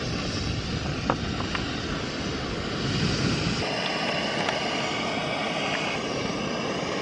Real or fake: real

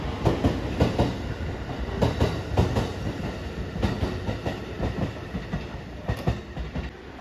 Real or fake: real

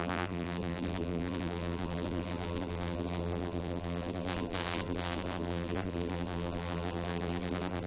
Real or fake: fake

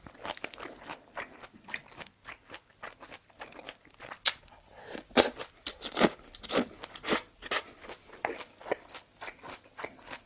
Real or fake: real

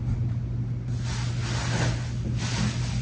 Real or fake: real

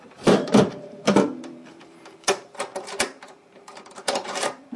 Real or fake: fake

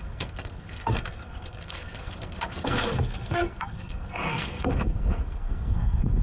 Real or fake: fake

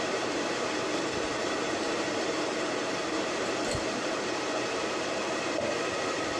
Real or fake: fake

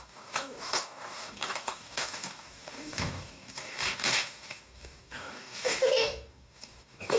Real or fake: fake